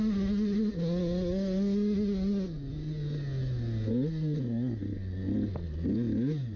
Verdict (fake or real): real